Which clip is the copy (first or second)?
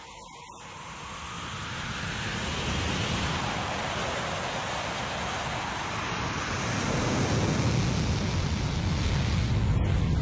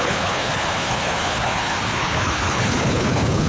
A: second